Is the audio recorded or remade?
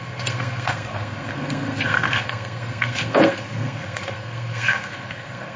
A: remade